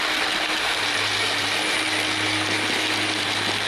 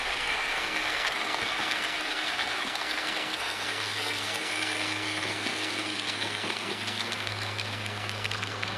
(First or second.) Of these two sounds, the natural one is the first